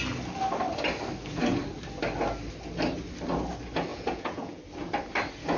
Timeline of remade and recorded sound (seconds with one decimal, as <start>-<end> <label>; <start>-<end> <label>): 0.0-3.9 recorded; 3.9-4.6 remade; 4.6-5.6 recorded